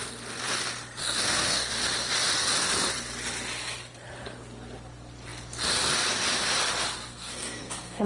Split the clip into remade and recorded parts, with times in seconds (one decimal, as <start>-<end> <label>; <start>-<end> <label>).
0.0-1.0 recorded; 1.0-1.7 remade; 1.7-7.1 recorded; 7.1-8.1 remade